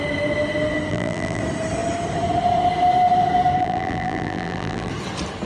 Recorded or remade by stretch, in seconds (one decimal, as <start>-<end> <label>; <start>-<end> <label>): 0.0-0.9 recorded; 0.9-1.4 remade; 1.4-3.6 recorded; 3.6-4.9 remade; 4.9-5.5 recorded